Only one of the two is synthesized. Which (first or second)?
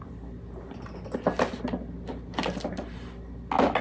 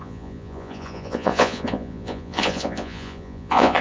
second